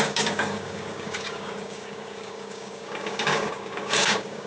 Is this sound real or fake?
fake